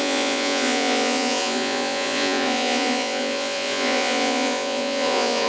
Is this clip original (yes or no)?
no